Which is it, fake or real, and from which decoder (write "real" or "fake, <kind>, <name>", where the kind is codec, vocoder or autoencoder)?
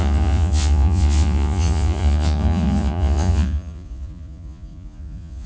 fake, vocoder, Vocos